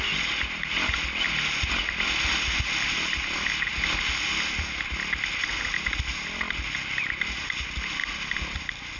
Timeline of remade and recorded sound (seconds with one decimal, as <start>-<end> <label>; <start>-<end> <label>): 0.0-9.0 recorded